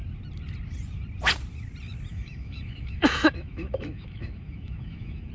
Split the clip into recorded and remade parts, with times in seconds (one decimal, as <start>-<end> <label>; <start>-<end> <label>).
0.0-2.1 recorded; 2.1-5.3 remade